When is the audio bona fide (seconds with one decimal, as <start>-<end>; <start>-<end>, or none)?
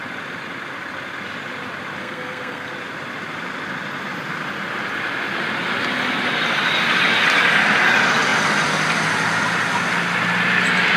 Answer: 0.0-2.0; 2.7-11.0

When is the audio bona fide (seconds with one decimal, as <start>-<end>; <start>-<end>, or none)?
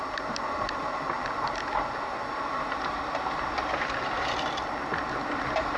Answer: 0.0-5.8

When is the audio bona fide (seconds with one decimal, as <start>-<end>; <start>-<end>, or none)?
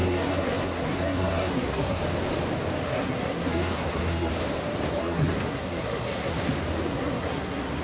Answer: 2.0-2.8; 4.3-5.0; 6.4-6.9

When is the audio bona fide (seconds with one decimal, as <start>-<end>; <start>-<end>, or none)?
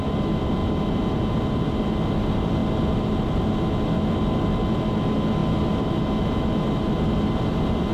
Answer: 0.0-5.4; 5.9-7.9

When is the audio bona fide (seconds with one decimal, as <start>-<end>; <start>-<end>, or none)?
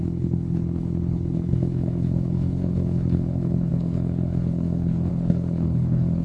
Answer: none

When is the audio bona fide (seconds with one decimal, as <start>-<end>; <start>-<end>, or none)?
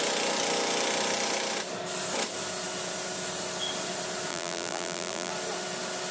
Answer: 0.0-4.3; 5.3-6.1